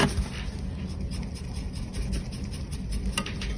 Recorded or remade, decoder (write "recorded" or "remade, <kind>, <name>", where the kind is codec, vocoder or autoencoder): recorded